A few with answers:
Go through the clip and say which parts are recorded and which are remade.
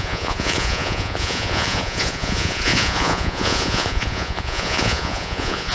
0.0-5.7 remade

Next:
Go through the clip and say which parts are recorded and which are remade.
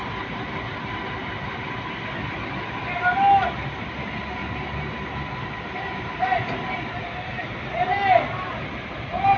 0.0-9.4 recorded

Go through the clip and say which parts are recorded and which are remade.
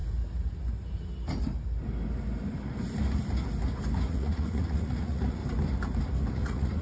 0.0-4.1 recorded; 4.1-5.4 remade; 5.4-6.3 recorded; 6.3-6.8 remade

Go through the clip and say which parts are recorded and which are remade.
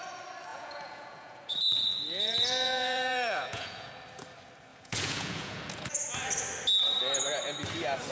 0.0-0.5 recorded; 0.5-3.9 remade; 3.9-4.7 recorded; 4.7-5.9 remade; 5.9-8.1 recorded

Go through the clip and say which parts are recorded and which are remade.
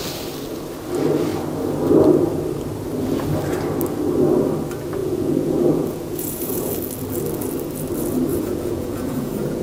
0.0-5.0 recorded; 5.0-6.7 remade; 6.7-8.3 recorded; 8.3-9.6 remade